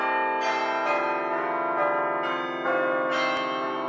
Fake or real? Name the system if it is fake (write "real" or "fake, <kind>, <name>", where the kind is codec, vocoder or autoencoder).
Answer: real